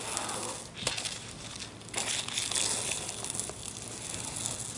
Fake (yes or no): no